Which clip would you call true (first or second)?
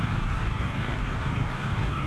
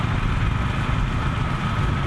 second